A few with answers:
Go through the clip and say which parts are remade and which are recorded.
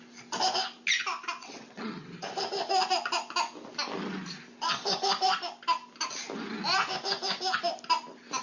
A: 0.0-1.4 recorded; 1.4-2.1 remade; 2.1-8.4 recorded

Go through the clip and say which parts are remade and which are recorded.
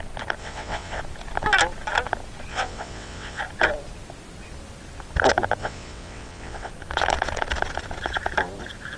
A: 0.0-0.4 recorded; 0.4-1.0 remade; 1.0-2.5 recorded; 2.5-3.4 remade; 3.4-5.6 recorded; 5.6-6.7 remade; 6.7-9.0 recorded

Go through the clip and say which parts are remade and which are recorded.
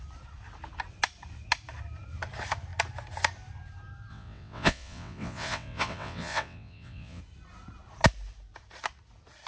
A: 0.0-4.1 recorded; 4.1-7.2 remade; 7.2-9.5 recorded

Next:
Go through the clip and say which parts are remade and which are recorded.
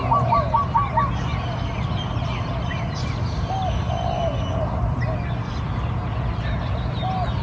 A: 0.0-7.4 recorded